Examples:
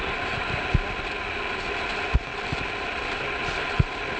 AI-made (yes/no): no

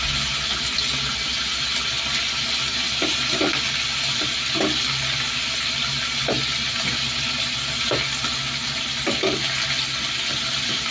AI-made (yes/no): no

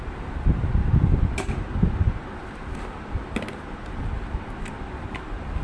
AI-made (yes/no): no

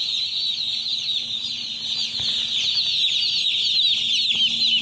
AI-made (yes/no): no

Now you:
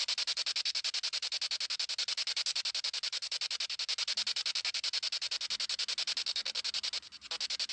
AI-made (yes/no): no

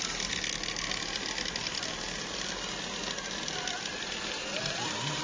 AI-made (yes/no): no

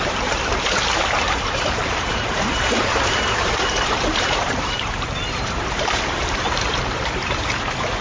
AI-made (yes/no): yes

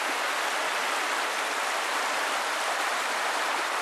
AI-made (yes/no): yes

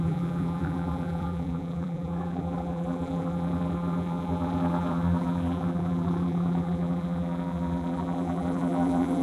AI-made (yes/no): yes